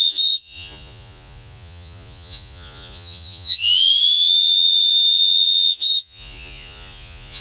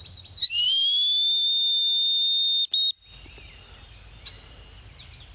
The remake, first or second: first